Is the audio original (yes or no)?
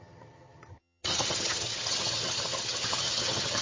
no